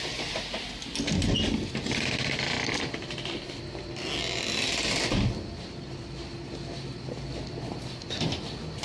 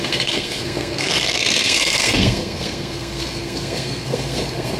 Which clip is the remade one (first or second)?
second